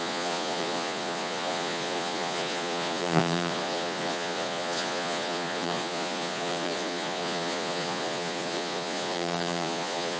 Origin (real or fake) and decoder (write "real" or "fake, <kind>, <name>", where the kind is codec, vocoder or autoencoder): fake, vocoder, Vocos